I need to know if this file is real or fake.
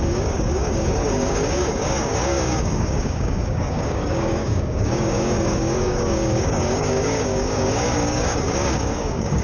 fake